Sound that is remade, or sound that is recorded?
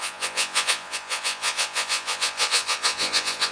remade